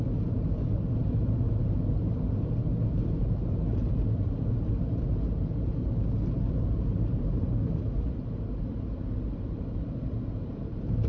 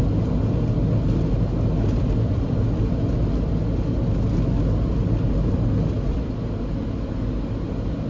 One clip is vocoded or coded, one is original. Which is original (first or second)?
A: second